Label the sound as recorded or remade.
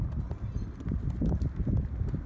recorded